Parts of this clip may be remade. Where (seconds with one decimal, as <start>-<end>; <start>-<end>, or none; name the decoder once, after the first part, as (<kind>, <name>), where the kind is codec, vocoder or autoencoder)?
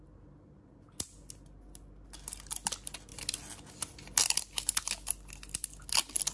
none